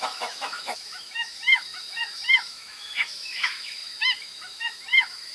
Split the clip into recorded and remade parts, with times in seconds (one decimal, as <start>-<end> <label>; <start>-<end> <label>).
0.0-5.3 remade